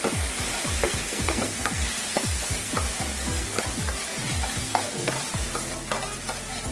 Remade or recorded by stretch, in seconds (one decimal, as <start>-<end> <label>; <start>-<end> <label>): 0.0-0.8 recorded; 0.8-2.7 remade; 2.7-3.1 recorded; 3.1-3.6 remade; 3.6-4.6 recorded; 4.6-5.1 remade; 5.1-6.7 recorded